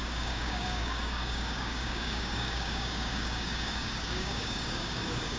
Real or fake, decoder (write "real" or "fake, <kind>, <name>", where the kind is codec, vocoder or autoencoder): fake, codec, DAC